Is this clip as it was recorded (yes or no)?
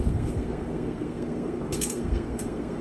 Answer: no